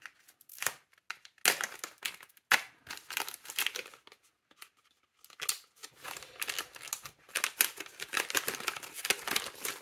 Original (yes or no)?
yes